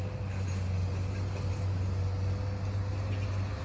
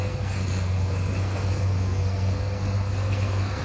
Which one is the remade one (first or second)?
second